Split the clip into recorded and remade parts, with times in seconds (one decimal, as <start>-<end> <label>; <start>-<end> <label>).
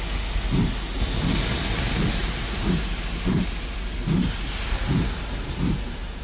0.0-2.2 recorded; 2.2-6.2 remade